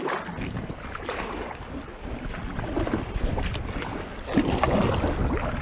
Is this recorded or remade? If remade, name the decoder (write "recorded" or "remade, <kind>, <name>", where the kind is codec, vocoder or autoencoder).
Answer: recorded